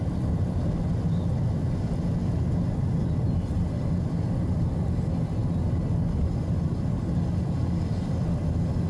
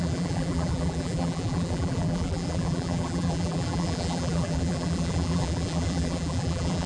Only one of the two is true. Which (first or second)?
first